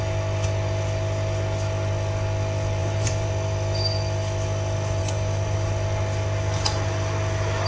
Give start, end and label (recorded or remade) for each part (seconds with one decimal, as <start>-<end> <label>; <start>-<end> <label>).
0.0-2.8 recorded; 2.8-3.3 remade; 3.3-5.0 recorded; 5.0-5.7 remade; 5.7-7.7 recorded